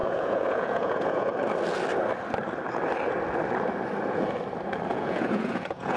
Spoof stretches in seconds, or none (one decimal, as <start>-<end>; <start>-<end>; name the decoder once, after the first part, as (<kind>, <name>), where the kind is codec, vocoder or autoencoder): 0.0-1.3 (vocoder, Vocos); 4.9-6.0

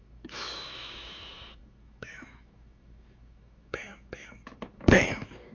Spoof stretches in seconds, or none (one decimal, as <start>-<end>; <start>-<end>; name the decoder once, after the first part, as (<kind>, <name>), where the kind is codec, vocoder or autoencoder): 0.0-5.5 (autoencoder, DAC-VAE)

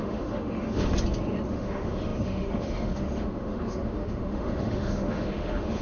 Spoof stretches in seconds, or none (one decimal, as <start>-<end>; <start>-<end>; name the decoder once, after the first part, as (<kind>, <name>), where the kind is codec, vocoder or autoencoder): 0.0-0.9 (autoencoder, DAC-VAE); 1.5-5.8

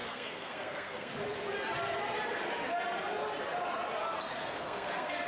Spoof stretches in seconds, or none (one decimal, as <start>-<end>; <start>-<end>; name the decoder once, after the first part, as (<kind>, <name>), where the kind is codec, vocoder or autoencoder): 0.0-1.1 (codec, SNAC); 4.2-5.3

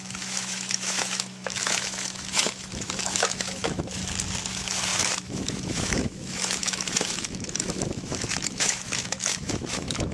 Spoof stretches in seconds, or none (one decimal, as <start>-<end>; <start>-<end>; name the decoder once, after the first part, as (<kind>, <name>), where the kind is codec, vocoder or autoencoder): 0.0-4.0 (autoencoder, DAC-VAE); 4.5-10.1

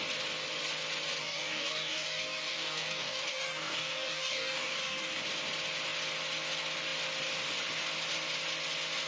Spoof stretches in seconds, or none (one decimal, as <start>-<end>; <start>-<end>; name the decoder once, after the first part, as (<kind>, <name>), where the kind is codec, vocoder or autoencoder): 1.2-5.2 (codec, DAC)